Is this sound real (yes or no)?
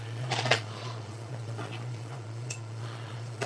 no